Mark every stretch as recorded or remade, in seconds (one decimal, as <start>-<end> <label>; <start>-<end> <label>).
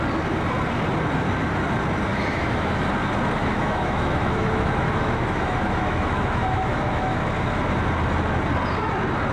0.0-2.1 recorded; 2.1-2.9 remade; 2.9-3.4 recorded; 3.4-7.3 remade; 7.3-9.3 recorded